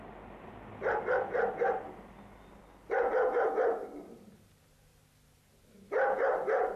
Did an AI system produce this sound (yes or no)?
no